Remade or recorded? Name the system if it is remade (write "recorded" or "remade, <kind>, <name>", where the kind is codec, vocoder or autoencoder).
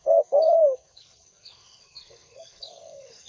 remade, codec, SNAC